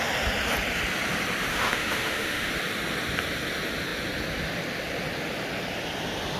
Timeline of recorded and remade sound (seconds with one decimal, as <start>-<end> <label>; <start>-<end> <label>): 0.0-1.5 recorded; 1.5-2.5 remade; 2.5-6.4 recorded